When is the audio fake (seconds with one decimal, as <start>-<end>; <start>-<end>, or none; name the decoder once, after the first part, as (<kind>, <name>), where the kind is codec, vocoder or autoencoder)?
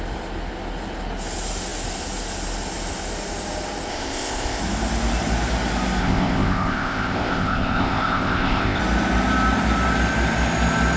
3.9-4.6 (codec, ZipCodec); 6.0-8.8